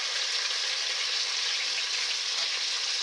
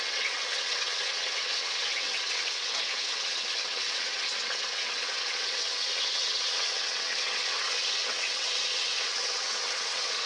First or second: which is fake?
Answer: second